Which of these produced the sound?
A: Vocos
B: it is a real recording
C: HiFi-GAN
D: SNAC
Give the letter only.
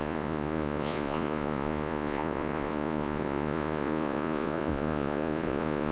A